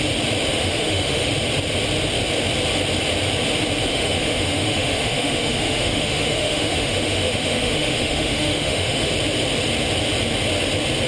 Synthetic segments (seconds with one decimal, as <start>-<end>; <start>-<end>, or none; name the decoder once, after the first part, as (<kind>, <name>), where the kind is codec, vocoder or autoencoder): 0.5-1.3 (autoencoder, DAC-VAE); 3.9-9.1